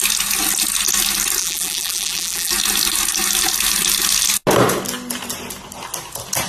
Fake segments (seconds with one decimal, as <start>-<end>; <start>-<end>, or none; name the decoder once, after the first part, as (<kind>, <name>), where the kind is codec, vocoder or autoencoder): 1.4-2.5 (vocoder, BigVGAN v2)